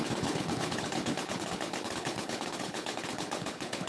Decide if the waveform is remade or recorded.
remade